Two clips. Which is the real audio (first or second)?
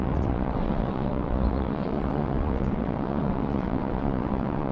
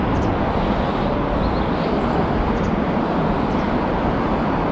second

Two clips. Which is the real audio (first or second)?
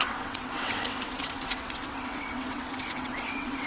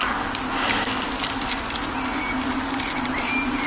second